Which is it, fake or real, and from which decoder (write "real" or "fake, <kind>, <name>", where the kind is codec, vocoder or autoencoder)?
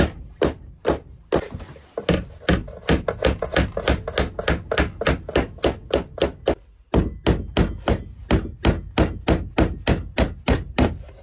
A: real